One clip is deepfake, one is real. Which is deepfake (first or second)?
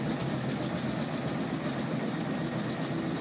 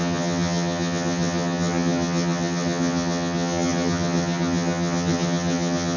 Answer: second